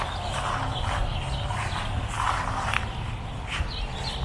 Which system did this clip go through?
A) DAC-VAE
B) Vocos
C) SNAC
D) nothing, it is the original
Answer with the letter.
D